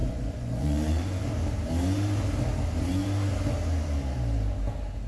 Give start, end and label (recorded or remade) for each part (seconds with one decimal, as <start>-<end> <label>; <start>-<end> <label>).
0.0-1.2 remade; 1.2-5.1 recorded

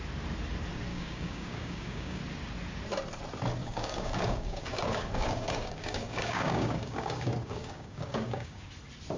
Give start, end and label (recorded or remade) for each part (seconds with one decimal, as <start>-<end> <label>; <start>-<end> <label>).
0.0-0.9 recorded; 0.9-2.2 remade; 2.2-3.6 recorded; 3.6-8.7 remade; 8.7-9.2 recorded

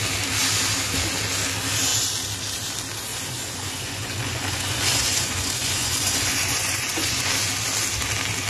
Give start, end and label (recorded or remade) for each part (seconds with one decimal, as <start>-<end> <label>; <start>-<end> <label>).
0.0-3.1 recorded; 3.1-7.3 remade; 7.3-8.5 recorded

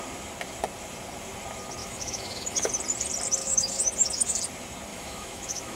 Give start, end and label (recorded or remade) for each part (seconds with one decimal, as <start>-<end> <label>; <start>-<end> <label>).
0.0-1.8 recorded; 1.8-2.7 remade; 2.7-3.4 recorded; 3.4-4.4 remade; 4.4-4.9 recorded; 4.9-5.8 remade